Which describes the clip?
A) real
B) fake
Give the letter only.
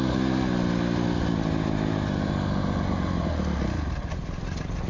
A